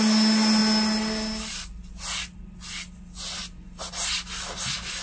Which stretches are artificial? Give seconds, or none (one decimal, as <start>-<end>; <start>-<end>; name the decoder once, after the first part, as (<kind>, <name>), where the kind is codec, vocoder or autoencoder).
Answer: none